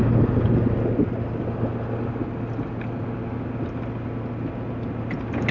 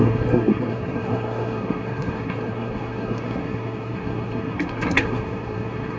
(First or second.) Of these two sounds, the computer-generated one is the second